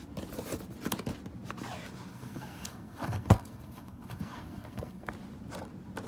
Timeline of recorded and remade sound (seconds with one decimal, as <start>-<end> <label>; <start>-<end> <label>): 0.0-2.1 recorded; 2.1-5.1 remade; 5.1-6.1 recorded